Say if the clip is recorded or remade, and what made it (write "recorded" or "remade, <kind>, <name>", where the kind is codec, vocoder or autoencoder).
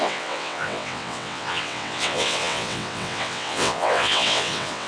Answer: remade, vocoder, WaveNeXt